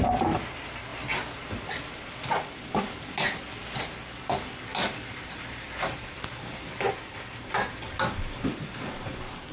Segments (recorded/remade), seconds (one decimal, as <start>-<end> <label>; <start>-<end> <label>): 0.0-9.5 recorded